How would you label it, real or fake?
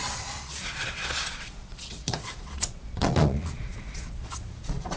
fake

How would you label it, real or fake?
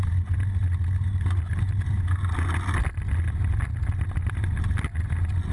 real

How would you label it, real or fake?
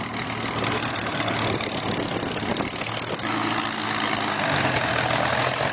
real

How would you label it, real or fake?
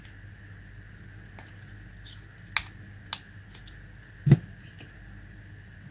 real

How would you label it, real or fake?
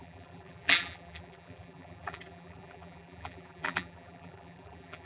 fake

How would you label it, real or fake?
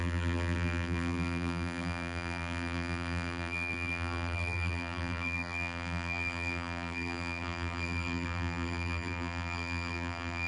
fake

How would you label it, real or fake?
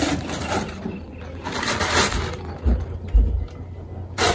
real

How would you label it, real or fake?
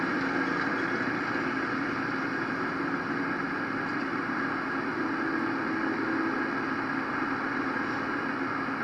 real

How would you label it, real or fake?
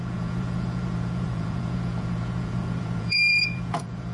fake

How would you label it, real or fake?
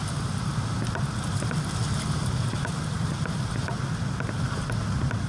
real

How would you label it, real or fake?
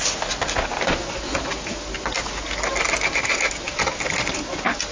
real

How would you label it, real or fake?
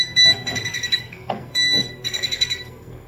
fake